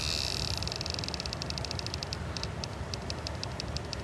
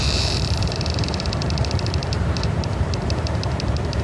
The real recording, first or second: first